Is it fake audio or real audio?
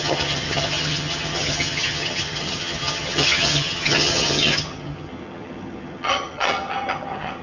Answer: fake